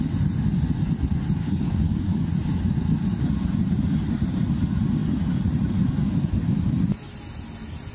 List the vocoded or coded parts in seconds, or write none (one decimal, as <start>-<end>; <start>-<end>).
1.4-2.3